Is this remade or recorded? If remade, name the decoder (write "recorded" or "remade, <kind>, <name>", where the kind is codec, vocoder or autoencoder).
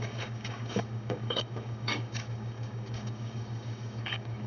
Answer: remade, codec, DAC